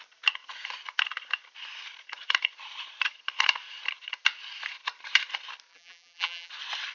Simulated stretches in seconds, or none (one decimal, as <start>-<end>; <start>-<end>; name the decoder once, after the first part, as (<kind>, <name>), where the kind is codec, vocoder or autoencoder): 5.7-6.5 (vocoder, BigVGAN v2)